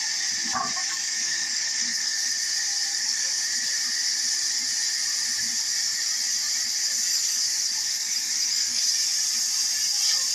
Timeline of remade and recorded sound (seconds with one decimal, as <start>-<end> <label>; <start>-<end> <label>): 0.0-0.8 recorded; 0.8-2.3 remade; 2.3-2.9 recorded; 2.9-3.4 remade; 3.4-7.1 recorded; 7.1-8.8 remade; 8.8-10.3 recorded